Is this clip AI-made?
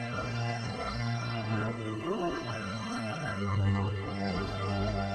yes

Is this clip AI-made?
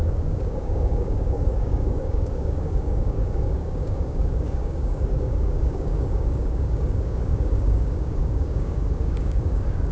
yes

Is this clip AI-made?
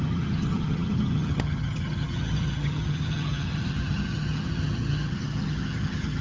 yes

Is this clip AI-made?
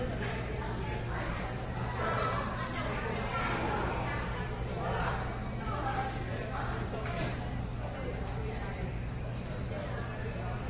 yes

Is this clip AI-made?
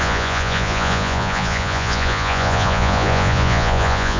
yes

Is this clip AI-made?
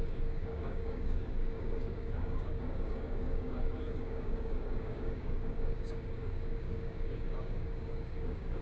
yes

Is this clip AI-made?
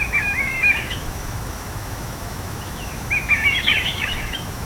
yes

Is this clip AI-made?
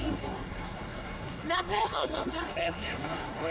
yes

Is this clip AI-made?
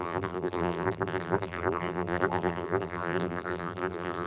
yes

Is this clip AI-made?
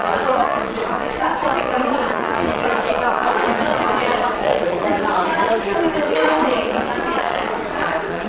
yes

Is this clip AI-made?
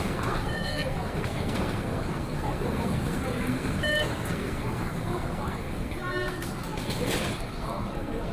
yes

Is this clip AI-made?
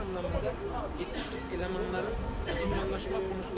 no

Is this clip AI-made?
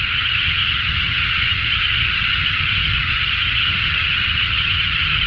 yes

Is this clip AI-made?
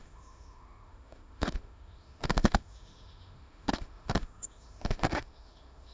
yes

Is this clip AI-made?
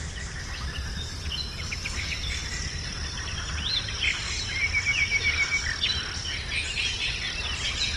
no